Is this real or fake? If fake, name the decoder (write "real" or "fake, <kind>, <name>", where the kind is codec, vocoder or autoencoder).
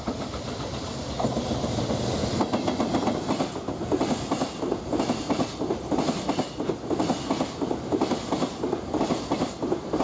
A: real